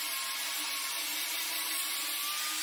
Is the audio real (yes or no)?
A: yes